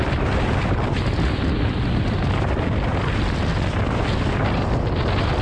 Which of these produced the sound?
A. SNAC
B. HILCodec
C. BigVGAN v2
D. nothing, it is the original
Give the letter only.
D